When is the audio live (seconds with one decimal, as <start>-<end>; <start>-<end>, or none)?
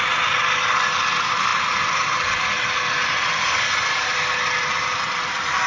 0.0-5.7